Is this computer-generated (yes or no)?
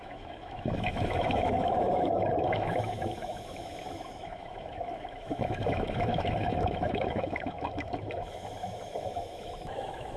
yes